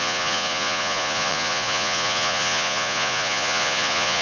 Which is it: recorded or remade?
remade